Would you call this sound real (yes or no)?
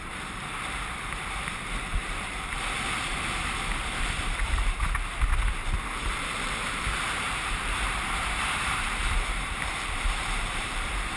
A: no